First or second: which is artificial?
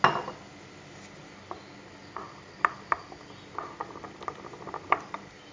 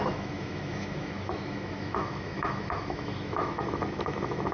second